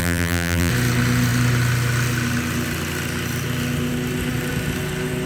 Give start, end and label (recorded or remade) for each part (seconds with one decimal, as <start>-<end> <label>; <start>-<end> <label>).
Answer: 0.0-0.7 remade; 0.7-5.3 recorded